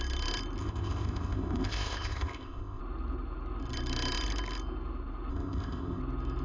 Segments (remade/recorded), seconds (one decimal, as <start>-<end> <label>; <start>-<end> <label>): 0.0-0.6 recorded; 0.6-2.8 remade; 2.8-5.3 recorded; 5.3-6.0 remade; 6.0-6.4 recorded